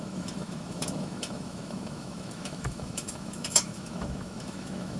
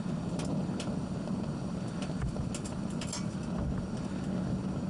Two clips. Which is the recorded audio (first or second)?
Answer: second